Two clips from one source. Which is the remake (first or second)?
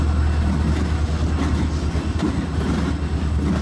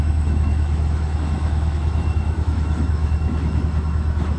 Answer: second